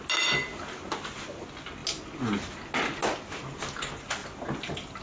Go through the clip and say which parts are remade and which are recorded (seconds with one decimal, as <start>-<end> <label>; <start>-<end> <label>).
0.0-5.0 recorded